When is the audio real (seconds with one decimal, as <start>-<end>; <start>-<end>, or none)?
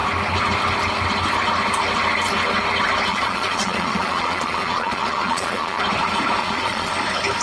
0.0-3.1; 5.8-6.4; 6.9-7.4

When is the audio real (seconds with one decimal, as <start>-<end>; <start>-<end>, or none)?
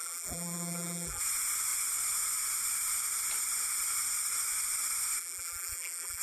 1.2-5.2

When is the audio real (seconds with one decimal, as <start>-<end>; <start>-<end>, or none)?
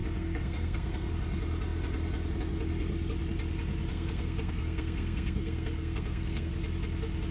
1.1-3.9; 6.5-7.3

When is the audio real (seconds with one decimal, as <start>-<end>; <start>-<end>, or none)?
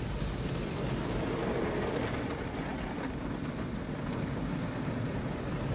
0.0-5.7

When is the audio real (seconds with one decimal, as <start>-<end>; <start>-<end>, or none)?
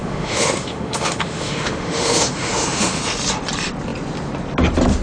3.0-5.0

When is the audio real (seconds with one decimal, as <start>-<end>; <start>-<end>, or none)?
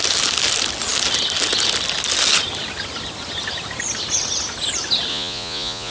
0.0-5.1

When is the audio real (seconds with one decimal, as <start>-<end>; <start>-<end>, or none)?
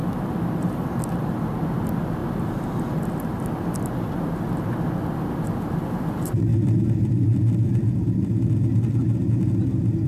0.0-10.1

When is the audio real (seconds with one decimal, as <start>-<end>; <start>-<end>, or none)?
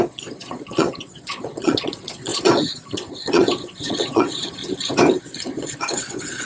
4.6-5.2